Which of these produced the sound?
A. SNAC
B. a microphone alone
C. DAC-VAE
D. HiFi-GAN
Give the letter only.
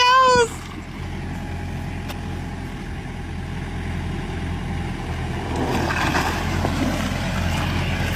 B